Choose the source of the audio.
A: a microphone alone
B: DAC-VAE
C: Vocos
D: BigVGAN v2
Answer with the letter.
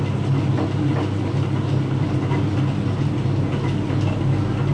A